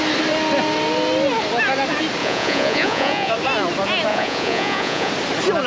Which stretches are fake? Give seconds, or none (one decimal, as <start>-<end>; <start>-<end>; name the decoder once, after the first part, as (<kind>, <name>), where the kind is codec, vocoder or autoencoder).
2.2-3.3 (vocoder, Vocos); 4.1-5.1